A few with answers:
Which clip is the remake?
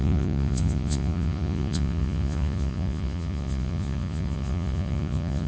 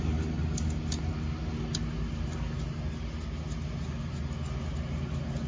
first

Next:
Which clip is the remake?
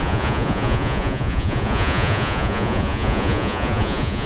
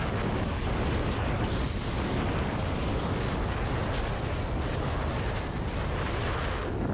first